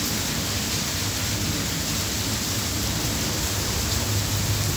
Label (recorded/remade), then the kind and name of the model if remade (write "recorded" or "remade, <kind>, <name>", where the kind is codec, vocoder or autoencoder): remade, vocoder, BigVGAN v2